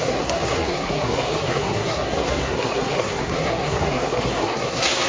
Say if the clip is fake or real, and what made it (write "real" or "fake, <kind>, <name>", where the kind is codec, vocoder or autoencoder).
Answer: fake, codec, SNAC